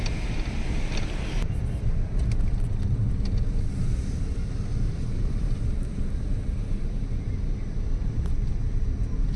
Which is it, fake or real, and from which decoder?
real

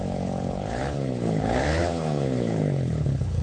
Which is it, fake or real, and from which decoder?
fake, codec, HILCodec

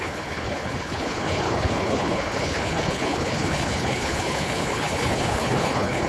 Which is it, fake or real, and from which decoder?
fake, codec, HILCodec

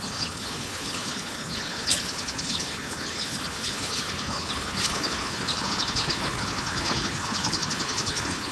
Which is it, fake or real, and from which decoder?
fake, codec, HILCodec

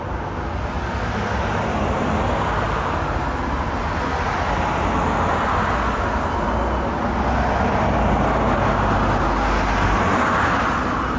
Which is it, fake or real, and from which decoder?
real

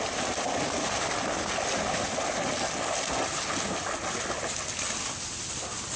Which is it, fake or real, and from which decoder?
real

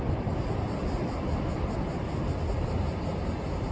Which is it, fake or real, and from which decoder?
real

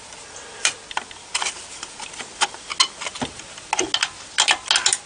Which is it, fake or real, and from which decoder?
real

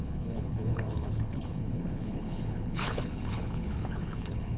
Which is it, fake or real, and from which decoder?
fake, codec, HILCodec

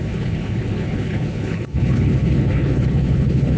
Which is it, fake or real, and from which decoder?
fake, codec, HILCodec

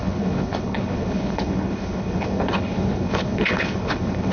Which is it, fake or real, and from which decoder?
fake, codec, HILCodec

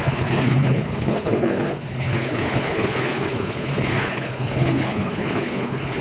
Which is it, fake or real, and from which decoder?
fake, codec, HILCodec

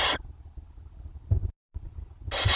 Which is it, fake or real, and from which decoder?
real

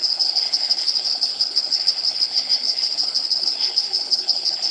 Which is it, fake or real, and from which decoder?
fake, codec, HILCodec